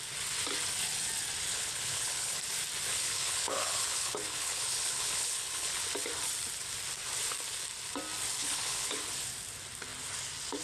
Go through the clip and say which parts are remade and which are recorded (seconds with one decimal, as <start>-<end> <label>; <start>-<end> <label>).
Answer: 0.0-1.5 recorded; 1.5-2.4 remade; 2.4-2.9 recorded; 2.9-5.8 remade; 5.8-8.4 recorded; 8.4-9.0 remade; 9.0-10.6 recorded